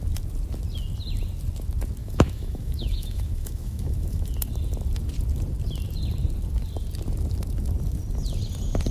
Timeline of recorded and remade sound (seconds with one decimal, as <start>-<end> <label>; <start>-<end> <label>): 0.0-2.0 recorded; 2.0-4.3 remade; 4.3-8.9 recorded